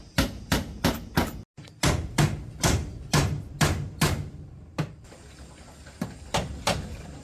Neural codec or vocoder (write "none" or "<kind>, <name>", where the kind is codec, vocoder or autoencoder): none